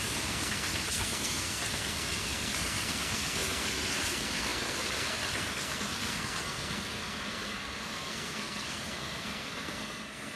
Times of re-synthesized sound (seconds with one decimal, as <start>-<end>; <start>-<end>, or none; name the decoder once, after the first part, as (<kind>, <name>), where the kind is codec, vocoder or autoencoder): 0.0-10.4 (codec, SNAC)